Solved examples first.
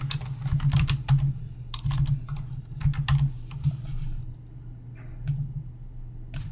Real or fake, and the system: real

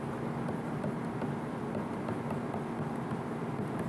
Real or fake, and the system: real